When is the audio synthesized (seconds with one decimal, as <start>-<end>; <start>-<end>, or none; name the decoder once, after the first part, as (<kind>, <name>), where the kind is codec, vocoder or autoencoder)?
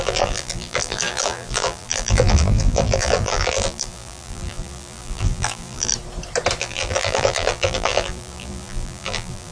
0.0-5.9 (vocoder, BigVGAN v2); 6.6-9.5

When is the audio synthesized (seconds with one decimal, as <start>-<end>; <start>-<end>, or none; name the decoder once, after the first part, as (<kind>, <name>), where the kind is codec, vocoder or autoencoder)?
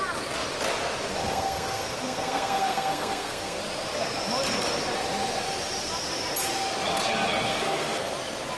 1.2-3.6 (codec, SNAC); 7.5-8.1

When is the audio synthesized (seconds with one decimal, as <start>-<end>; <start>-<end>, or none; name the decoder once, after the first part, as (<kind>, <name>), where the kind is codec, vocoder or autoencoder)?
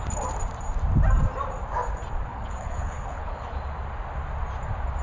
2.3-3.6 (codec, HILCodec)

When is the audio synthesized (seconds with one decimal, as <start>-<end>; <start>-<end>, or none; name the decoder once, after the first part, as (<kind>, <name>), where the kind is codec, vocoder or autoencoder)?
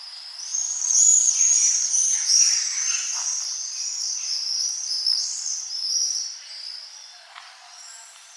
none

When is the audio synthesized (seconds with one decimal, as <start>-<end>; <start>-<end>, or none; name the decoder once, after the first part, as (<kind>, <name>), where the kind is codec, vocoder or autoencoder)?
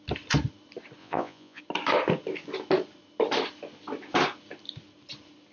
1.0-1.6 (vocoder, Vocos)